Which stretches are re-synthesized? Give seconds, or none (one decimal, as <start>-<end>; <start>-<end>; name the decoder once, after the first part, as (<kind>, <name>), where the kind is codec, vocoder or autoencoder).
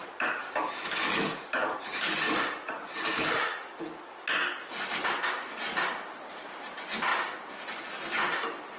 0.4-2.3 (codec, DAC)